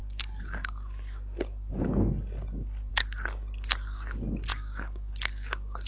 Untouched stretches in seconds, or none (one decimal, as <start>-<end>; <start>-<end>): 0.0-4.5; 5.1-5.9